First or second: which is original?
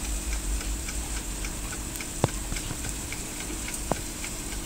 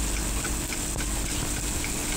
second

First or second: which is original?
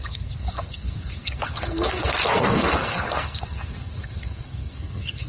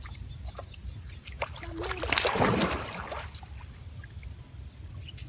second